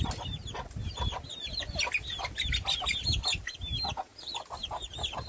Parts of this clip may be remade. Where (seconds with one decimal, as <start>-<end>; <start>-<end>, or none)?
0.8-1.3; 4.1-5.3